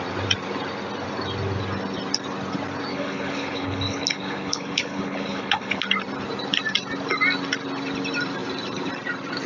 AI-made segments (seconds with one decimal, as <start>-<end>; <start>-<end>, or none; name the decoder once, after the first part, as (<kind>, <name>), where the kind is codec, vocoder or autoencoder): 2.9-5.8 (codec, HILCodec)